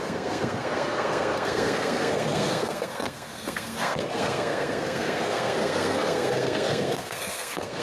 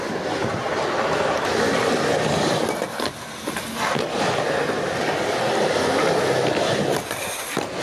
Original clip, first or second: second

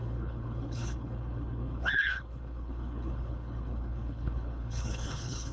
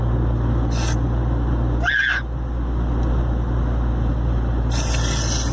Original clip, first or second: second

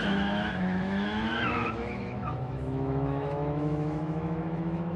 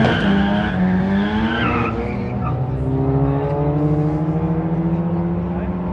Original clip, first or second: second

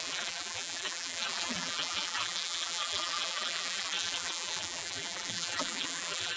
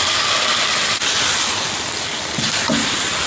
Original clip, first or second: second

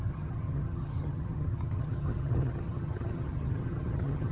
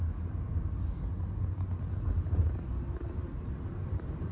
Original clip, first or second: second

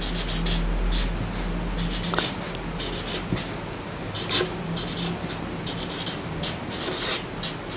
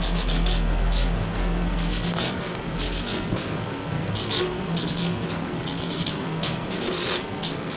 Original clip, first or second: first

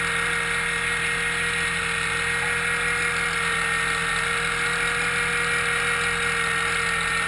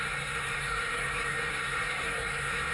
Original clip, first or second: first